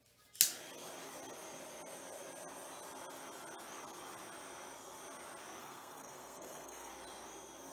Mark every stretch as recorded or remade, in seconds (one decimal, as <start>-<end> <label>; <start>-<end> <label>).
0.0-5.6 recorded; 5.6-6.9 remade; 6.9-7.7 recorded